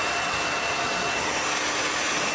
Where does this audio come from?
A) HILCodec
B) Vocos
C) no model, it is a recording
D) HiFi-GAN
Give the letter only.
C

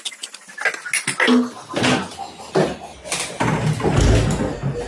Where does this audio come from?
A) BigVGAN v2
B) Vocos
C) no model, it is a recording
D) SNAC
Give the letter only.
C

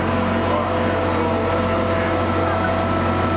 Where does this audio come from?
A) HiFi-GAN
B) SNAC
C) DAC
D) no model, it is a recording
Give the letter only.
D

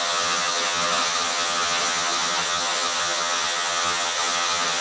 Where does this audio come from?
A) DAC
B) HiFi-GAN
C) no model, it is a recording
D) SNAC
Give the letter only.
B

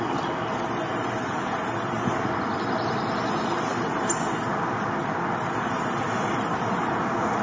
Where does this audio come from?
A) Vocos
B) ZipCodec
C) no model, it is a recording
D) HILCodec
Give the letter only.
C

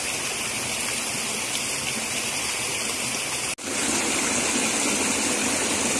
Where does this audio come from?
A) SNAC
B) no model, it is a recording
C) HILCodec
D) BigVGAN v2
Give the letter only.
B